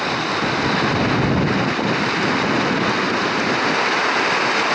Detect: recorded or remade recorded